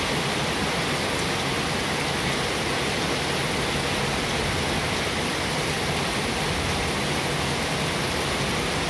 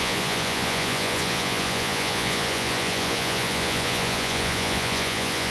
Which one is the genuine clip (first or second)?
first